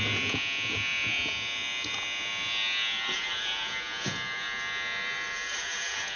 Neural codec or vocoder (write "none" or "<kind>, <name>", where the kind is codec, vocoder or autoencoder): vocoder, Vocos